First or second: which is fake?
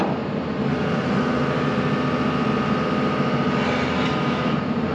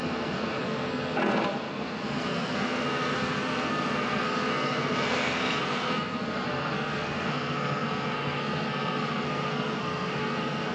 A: second